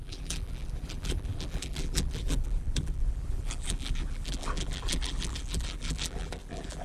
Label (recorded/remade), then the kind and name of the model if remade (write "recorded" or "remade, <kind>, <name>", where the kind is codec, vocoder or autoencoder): remade, vocoder, BigVGAN v2